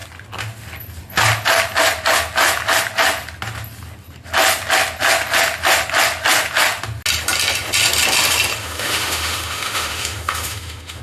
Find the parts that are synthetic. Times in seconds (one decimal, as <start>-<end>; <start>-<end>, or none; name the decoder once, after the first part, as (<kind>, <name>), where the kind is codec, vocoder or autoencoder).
8.6-11.0 (autoencoder, DAC-VAE)